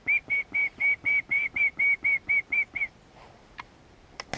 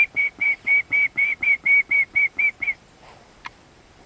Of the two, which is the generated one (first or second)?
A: second